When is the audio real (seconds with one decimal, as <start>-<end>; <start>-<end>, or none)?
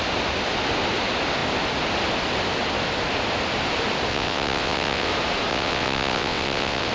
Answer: 0.0-4.1; 5.1-5.5